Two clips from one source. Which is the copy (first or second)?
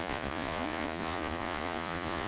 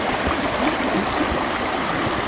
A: first